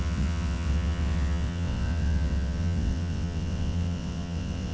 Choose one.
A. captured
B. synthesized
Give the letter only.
B